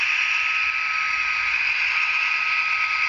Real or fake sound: real